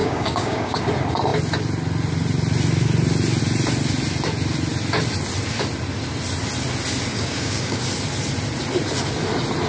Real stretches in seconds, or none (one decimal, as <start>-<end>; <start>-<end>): 0.8-7.1; 7.8-9.7